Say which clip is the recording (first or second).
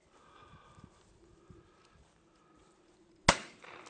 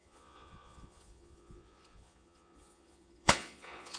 first